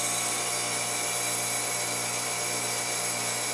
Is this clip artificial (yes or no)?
no